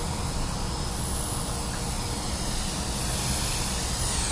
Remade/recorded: recorded